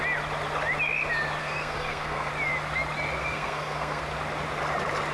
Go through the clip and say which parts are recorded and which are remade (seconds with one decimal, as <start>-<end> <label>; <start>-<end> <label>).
0.0-1.4 recorded; 1.4-2.3 remade; 2.3-3.2 recorded; 3.2-4.0 remade; 4.0-5.1 recorded